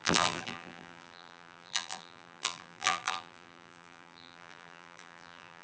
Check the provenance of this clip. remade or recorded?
remade